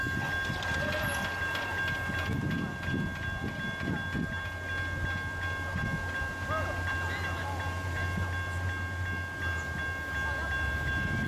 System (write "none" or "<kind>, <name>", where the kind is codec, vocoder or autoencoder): none